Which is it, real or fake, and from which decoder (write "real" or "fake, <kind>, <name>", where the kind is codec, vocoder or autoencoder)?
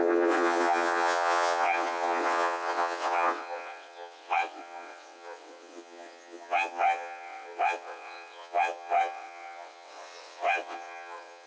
fake, vocoder, WaveNeXt